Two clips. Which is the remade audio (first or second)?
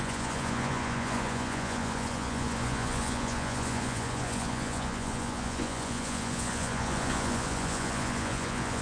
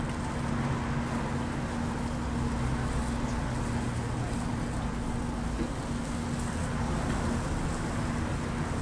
first